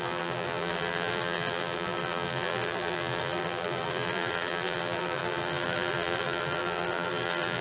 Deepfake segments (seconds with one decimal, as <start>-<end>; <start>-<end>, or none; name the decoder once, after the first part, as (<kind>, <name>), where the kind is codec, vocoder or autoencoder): 0.0-7.6 (vocoder, BigVGAN v2)